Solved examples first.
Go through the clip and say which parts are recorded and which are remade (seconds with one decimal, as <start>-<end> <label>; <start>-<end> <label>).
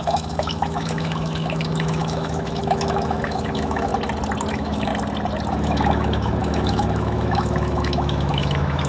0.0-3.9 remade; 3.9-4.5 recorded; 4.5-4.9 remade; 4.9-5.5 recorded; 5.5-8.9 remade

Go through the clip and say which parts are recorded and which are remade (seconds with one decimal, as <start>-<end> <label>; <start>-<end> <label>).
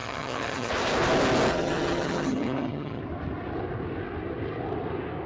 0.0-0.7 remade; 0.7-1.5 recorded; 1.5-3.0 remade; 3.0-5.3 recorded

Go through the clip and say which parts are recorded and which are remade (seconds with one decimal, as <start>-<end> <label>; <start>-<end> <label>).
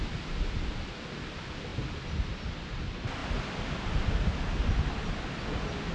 0.0-5.9 recorded